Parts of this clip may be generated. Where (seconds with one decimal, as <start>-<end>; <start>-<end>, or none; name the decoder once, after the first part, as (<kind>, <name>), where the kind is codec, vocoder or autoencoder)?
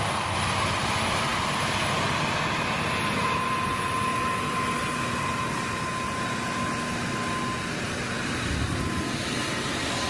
none